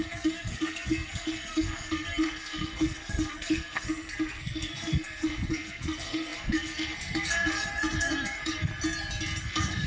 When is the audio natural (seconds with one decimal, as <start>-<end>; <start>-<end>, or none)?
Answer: 8.7-9.4